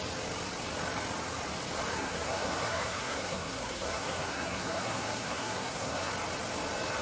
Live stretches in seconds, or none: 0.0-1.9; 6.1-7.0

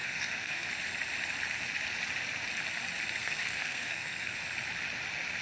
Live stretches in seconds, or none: 0.7-3.2; 4.3-5.4

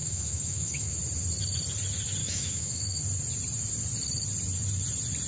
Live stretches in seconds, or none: 1.0-2.2; 3.0-5.3

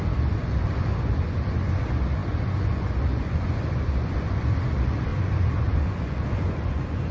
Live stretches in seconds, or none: none

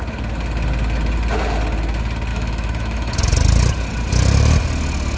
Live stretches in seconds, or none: 0.0-2.3; 3.1-5.2